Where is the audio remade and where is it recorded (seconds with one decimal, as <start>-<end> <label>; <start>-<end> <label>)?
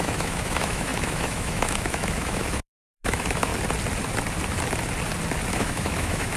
0.0-3.5 remade; 3.5-5.5 recorded; 5.5-6.4 remade